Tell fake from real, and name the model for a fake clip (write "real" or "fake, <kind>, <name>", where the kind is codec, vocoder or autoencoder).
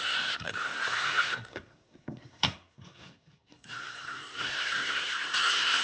fake, codec, SNAC